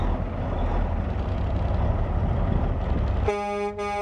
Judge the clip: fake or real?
real